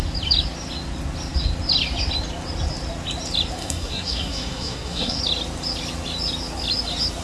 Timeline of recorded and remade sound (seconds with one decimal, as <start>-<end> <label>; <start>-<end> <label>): 0.0-3.6 recorded; 3.6-5.2 remade; 5.2-7.2 recorded